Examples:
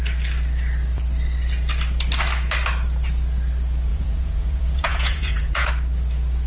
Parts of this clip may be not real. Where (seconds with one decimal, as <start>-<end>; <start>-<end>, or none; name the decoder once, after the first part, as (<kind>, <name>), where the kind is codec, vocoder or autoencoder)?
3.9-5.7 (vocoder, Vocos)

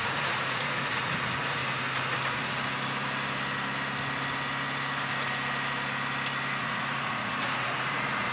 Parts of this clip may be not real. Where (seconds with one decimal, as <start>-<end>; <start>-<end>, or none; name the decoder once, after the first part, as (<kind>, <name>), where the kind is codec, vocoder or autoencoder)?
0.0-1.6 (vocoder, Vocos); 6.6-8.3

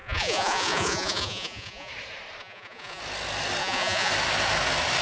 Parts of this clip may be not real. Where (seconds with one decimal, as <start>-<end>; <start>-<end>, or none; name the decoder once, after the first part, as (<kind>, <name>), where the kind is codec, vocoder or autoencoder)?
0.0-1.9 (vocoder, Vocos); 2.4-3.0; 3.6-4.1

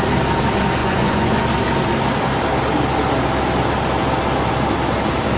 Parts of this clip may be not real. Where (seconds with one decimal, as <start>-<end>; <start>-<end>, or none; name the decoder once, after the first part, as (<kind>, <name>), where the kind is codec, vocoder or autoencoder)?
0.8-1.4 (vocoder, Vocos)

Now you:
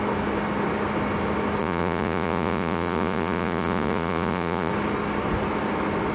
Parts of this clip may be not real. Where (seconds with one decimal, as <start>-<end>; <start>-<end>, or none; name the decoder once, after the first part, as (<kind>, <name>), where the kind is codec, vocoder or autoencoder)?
1.6-4.7 (vocoder, Vocos)

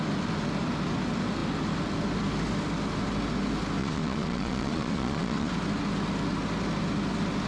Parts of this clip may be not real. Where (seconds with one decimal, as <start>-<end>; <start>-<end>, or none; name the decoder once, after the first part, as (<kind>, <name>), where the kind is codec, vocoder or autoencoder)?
3.8-5.5 (vocoder, Vocos)

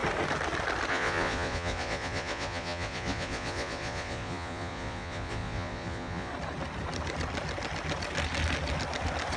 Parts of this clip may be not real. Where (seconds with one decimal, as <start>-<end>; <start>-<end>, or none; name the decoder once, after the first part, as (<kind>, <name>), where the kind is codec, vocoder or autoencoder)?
0.9-6.3 (vocoder, Vocos)